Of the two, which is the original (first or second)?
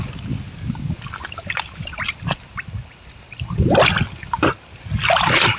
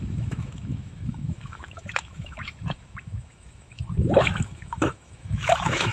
first